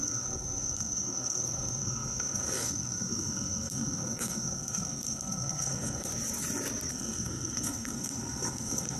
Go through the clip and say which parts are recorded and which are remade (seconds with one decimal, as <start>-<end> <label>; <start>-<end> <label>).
0.0-6.1 remade; 6.1-6.9 recorded; 6.9-9.0 remade